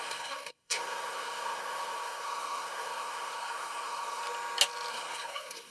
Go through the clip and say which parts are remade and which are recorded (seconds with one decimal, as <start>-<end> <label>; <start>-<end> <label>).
0.0-4.2 remade; 4.2-4.9 recorded; 4.9-5.7 remade

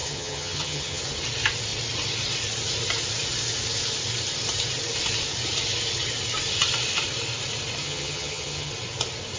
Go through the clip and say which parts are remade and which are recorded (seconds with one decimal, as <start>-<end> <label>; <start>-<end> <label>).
0.0-1.0 remade; 1.0-7.8 recorded; 7.8-8.7 remade; 8.7-9.4 recorded

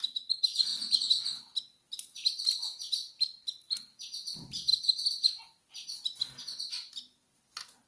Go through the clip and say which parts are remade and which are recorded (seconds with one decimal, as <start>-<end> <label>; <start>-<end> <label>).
0.0-7.9 recorded

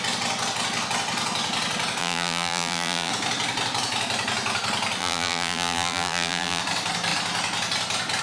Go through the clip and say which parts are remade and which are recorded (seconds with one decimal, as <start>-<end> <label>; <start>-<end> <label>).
0.0-2.0 recorded; 2.0-3.1 remade; 3.1-5.0 recorded; 5.0-6.6 remade; 6.6-8.2 recorded

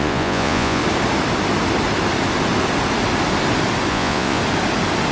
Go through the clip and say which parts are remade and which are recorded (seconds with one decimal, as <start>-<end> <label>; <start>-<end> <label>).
0.0-0.8 remade; 0.8-3.9 recorded; 3.9-4.4 remade; 4.4-5.1 recorded